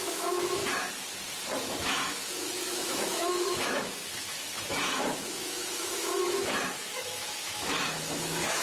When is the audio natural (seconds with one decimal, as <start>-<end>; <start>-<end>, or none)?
0.6-1.8